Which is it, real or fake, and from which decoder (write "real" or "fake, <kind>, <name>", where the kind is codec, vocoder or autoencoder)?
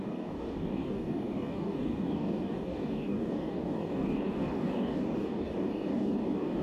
fake, codec, DAC